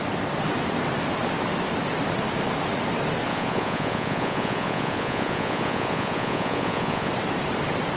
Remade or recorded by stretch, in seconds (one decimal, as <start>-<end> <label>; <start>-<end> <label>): 0.0-3.3 recorded; 3.3-7.1 remade; 7.1-8.0 recorded